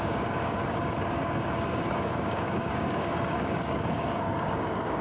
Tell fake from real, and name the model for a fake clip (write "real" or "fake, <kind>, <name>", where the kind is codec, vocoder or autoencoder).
fake, codec, DAC